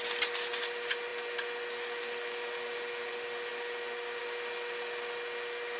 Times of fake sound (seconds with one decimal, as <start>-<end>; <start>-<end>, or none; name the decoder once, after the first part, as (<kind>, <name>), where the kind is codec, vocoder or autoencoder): none